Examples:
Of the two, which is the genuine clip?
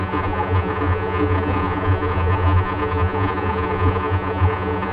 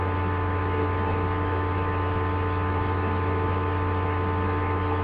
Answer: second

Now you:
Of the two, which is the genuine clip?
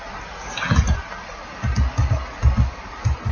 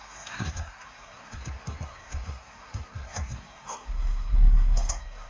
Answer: first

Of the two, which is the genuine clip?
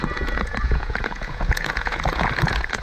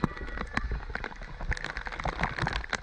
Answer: second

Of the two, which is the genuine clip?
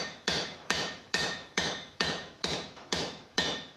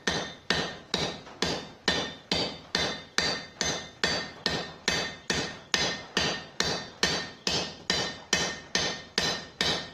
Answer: second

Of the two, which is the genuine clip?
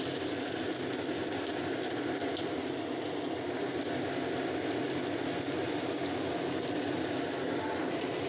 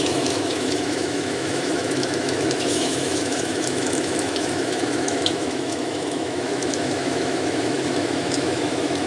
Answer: first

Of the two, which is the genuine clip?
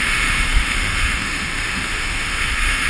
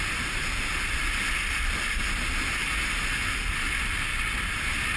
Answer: second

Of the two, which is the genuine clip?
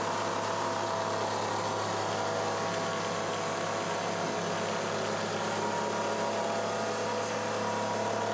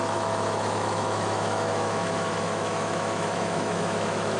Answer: first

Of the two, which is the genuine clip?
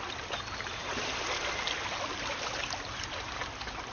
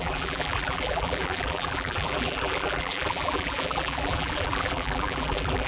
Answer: first